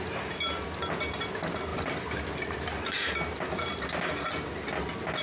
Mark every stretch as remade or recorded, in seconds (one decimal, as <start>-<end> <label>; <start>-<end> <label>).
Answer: 0.0-5.2 recorded